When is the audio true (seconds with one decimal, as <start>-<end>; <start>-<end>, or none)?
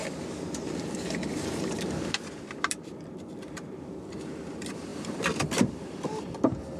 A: 0.0-1.3